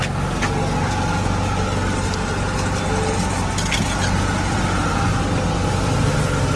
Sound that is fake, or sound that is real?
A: real